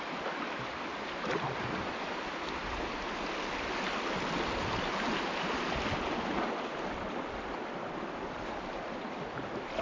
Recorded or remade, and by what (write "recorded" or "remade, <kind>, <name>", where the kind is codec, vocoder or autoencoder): recorded